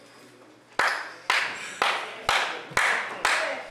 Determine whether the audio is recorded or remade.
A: recorded